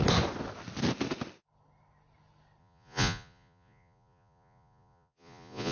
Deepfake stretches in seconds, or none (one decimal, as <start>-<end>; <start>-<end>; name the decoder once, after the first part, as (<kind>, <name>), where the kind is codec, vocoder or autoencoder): 2.6-5.7 (vocoder, Vocos)